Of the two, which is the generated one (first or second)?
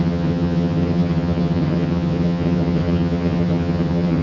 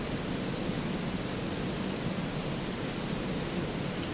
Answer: first